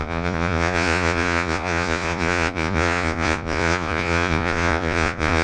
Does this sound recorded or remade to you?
remade